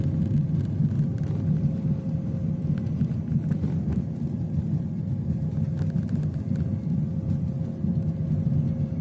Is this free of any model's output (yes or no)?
yes